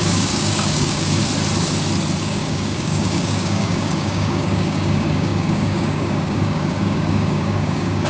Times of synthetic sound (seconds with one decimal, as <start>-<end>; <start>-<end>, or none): 0.0-1.2; 2.2-8.1